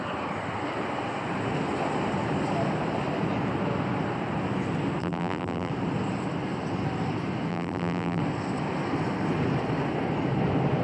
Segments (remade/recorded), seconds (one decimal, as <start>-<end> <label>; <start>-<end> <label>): 0.0-5.0 recorded; 5.0-5.7 remade; 5.7-7.5 recorded; 7.5-8.2 remade; 8.2-10.8 recorded